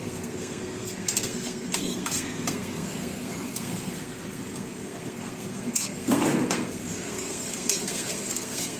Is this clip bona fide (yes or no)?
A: no